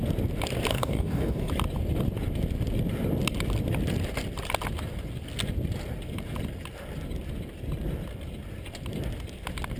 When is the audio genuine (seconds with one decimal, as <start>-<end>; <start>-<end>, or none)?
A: 0.0-0.7; 1.5-9.8